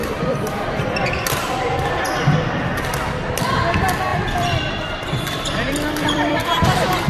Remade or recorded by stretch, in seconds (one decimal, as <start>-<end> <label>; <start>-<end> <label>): 0.0-1.9 remade; 1.9-4.1 recorded; 4.1-7.1 remade